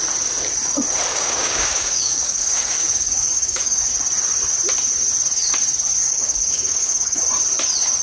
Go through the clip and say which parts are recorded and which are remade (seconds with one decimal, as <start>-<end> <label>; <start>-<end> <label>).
0.0-1.1 recorded; 1.1-3.9 remade; 3.9-6.0 recorded; 6.0-7.2 remade; 7.2-8.0 recorded